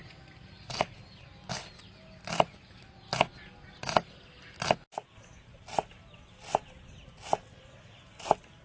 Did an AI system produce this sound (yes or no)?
no